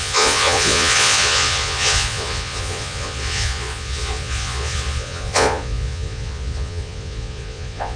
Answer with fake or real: fake